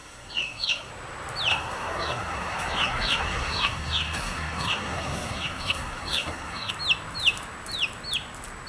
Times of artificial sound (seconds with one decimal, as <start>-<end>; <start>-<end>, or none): 0.0-0.9; 1.5-6.7